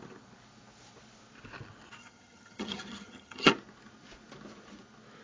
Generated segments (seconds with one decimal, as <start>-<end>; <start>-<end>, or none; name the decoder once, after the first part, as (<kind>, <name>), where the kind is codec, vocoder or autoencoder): 2.0-3.5 (vocoder, HiFi-GAN)